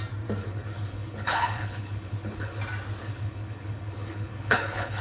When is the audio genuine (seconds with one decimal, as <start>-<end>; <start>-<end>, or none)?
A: 0.0-0.4; 2.6-3.0

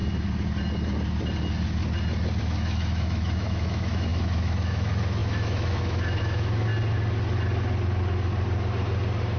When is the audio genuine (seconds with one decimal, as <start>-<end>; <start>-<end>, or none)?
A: 0.0-2.4; 6.7-9.4